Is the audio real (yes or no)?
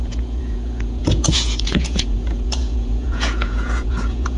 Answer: no